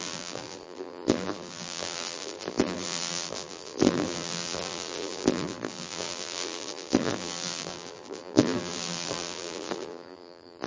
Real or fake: fake